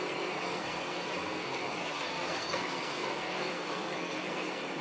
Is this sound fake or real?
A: fake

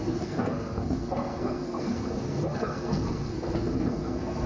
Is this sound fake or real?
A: fake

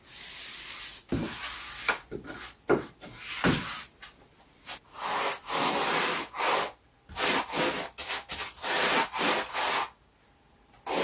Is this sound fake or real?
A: real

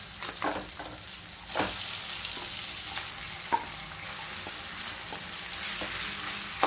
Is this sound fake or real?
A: real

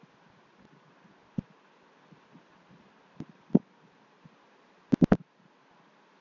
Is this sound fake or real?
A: real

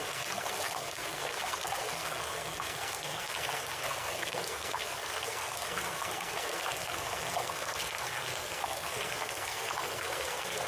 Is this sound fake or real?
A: fake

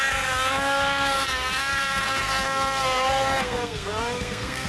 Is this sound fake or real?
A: fake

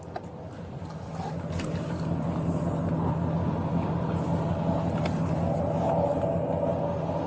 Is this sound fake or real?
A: real